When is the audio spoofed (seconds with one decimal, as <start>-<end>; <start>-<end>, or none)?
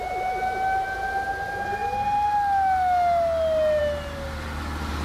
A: none